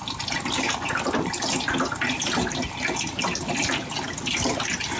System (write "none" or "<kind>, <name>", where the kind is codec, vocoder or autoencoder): none